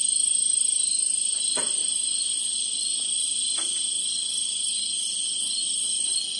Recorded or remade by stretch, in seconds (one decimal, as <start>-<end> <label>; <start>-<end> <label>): 0.0-6.4 recorded